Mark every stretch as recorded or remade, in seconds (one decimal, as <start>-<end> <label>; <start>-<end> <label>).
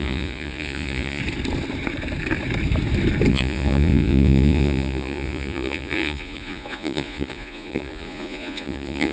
0.0-1.2 remade; 1.2-3.3 recorded; 3.3-9.1 remade